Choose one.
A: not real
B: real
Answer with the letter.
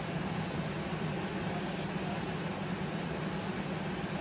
A